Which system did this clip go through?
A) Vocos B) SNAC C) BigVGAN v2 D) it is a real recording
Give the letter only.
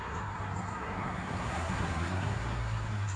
B